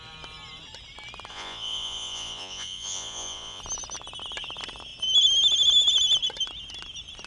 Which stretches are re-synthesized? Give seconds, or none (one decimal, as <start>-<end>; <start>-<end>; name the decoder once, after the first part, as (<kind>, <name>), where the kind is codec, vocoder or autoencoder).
1.3-3.6 (vocoder, Vocos)